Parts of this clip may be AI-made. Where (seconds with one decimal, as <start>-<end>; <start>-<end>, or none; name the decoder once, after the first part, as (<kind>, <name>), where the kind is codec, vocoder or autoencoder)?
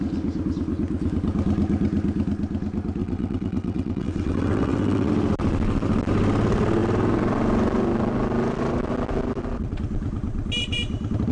3.0-5.1 (vocoder, WaveNeXt)